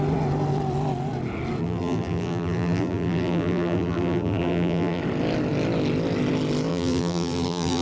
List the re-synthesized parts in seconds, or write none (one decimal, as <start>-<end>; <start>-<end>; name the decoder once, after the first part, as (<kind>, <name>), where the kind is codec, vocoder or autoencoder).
1.6-5.0 (vocoder, BigVGAN v2); 6.7-7.8